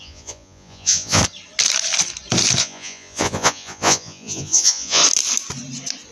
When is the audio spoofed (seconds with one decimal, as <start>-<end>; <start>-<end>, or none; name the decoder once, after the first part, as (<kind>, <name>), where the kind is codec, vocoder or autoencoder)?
0.0-1.2 (vocoder, Vocos); 2.6-5.0